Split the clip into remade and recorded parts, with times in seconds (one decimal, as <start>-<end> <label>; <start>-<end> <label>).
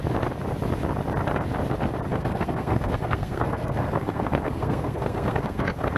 0.0-2.1 recorded; 2.1-6.0 remade